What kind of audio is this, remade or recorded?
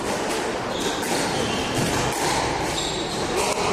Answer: recorded